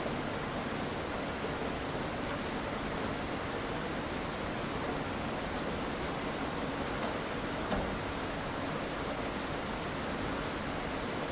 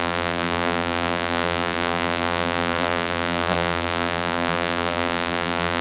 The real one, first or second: first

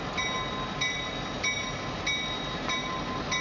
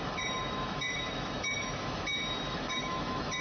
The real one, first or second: first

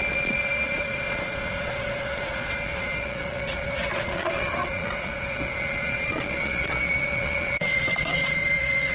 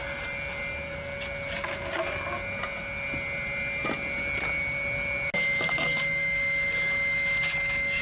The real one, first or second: second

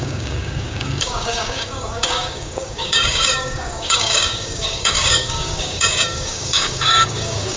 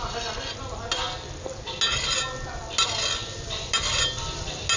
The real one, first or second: second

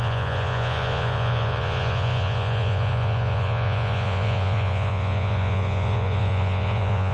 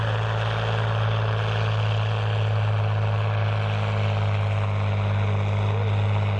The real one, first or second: second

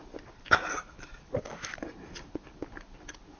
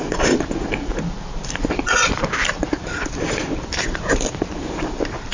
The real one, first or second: first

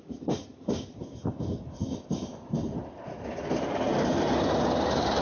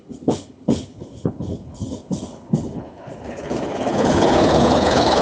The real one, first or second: first